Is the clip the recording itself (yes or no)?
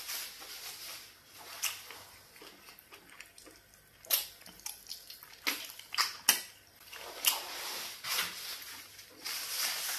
yes